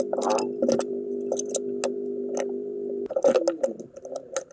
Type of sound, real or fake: real